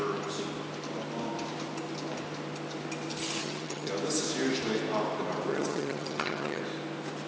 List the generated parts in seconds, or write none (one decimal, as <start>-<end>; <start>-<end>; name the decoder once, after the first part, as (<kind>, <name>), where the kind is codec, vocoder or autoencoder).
3.4-3.9 (vocoder, HiFi-GAN); 5.5-6.6